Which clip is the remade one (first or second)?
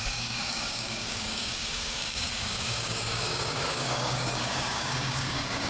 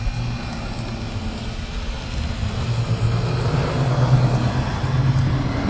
first